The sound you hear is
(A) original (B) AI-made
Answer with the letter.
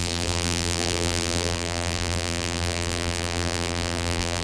B